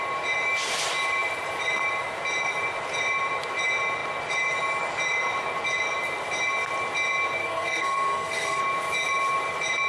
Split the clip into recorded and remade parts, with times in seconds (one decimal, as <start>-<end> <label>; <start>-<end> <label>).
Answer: 0.0-7.4 recorded; 7.4-8.6 remade; 8.6-9.9 recorded